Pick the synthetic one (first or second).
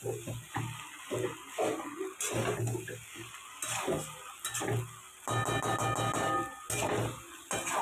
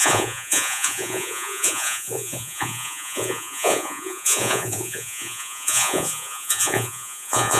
second